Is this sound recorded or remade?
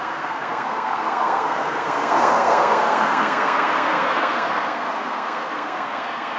remade